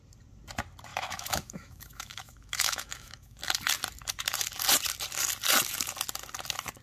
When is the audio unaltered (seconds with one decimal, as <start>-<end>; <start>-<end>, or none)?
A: 0.0-0.9; 3.4-6.8